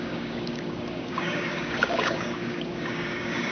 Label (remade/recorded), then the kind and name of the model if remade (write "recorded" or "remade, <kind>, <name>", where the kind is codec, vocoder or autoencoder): remade, codec, DAC